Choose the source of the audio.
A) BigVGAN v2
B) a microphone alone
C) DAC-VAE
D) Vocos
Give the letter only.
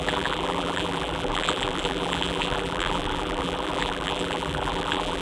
A